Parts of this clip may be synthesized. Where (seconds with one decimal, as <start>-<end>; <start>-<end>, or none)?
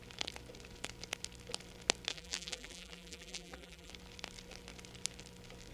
2.1-3.9